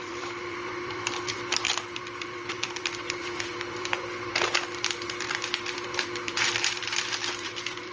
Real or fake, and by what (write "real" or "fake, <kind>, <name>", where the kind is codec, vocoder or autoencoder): fake, vocoder, BigVGAN v2